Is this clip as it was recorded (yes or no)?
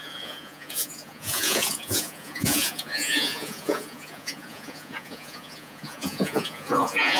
no